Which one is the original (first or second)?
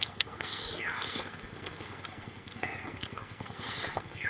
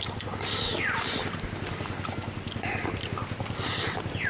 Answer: second